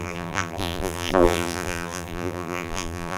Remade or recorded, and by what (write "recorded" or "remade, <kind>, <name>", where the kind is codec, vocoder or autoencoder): remade, vocoder, BigVGAN v2